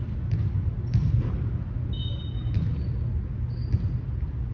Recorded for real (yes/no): yes